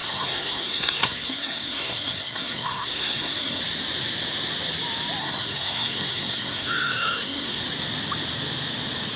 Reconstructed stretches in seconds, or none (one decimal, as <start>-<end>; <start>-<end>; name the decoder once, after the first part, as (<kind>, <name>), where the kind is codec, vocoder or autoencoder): 0.0-3.6 (codec, SNAC); 5.2-7.6